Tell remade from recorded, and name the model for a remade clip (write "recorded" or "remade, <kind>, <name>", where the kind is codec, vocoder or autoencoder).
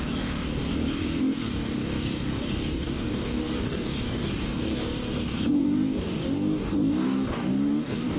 remade, codec, DAC